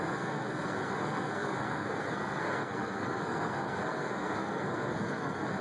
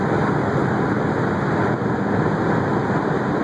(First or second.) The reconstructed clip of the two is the first